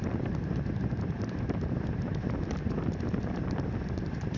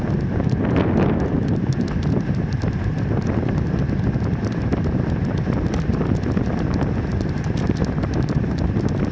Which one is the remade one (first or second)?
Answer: first